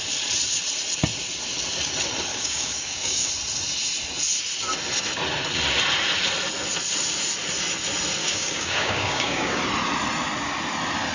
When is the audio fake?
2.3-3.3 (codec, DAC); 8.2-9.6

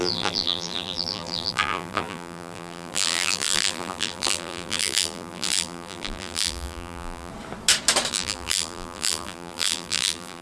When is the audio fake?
0.0-7.3 (vocoder, BigVGAN v2); 8.1-10.4

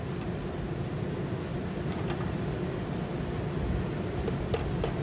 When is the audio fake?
none

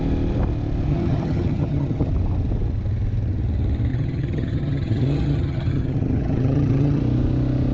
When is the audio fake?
0.9-2.1 (vocoder, HiFi-GAN); 3.9-7.0

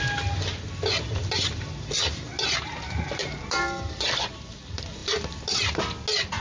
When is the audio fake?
1.2-4.6 (vocoder, BigVGAN v2); 5.0-5.8

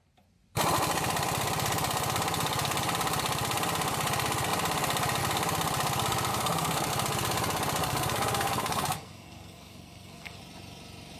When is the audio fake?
6.3-6.9 (codec, SNAC); 7.8-10.4

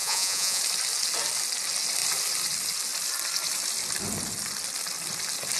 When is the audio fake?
0.0-0.6 (vocoder, Vocos)

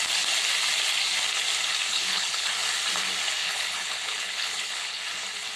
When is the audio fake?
1.9-2.5 (codec, HILCodec); 3.4-5.0